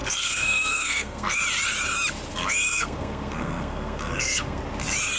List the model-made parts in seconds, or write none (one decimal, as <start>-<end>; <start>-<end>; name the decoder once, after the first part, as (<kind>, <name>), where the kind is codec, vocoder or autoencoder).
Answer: 0.0-1.4 (codec, SNAC); 2.3-4.6